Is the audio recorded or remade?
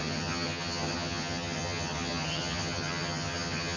remade